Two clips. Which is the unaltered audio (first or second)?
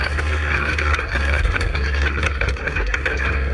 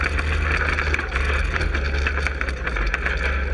second